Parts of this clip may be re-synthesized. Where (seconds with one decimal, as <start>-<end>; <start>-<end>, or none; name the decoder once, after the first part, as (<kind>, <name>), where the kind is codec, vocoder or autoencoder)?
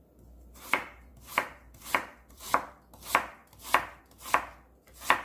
1.1-2.7 (vocoder, BigVGAN v2)